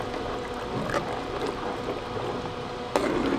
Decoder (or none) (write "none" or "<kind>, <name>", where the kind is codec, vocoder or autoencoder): none